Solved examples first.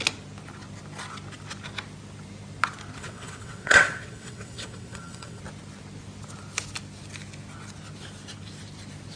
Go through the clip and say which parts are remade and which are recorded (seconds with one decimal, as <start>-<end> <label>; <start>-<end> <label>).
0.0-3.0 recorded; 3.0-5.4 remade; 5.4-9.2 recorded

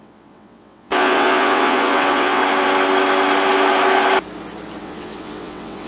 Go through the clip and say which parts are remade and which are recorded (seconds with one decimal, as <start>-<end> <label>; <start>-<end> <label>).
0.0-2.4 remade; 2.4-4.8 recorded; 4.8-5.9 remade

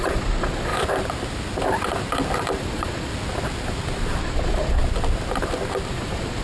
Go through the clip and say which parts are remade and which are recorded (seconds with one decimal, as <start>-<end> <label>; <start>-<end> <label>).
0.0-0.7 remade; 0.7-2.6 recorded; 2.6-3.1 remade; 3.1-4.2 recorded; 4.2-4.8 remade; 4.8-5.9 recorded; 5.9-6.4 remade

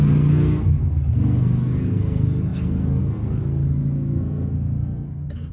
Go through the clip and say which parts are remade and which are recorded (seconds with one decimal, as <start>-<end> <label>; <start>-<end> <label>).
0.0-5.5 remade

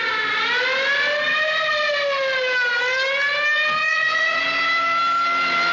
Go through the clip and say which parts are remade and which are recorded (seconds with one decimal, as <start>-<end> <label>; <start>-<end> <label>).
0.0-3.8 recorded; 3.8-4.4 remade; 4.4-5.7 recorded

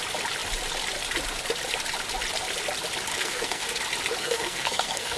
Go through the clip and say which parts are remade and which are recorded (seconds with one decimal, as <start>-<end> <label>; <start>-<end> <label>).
0.0-3.1 recorded; 3.1-3.8 remade; 3.8-4.2 recorded; 4.2-5.2 remade

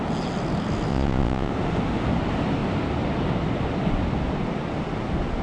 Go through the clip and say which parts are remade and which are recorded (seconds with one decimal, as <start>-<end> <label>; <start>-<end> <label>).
0.0-0.9 recorded; 0.9-1.5 remade; 1.5-5.4 recorded

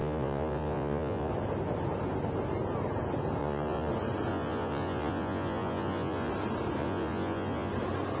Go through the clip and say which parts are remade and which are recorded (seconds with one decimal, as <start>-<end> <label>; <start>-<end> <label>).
0.0-1.3 remade; 1.3-3.4 recorded; 3.4-3.9 remade; 3.9-4.3 recorded; 4.3-6.3 remade; 6.3-6.8 recorded; 6.8-7.7 remade; 7.7-8.2 recorded